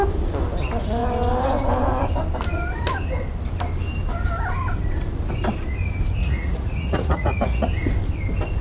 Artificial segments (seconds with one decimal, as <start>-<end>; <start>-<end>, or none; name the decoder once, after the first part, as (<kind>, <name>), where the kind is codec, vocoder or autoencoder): 6.2-7.7 (vocoder, Vocos)